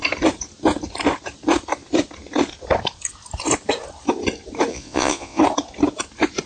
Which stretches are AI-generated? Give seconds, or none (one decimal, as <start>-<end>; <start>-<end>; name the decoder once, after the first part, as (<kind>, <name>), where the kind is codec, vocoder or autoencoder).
4.7-5.4 (vocoder, Vocos)